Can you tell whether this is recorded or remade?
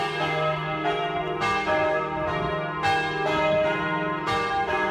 recorded